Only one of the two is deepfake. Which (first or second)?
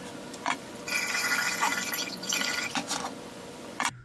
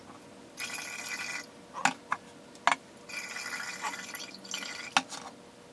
first